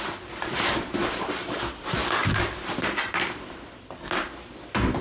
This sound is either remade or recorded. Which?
recorded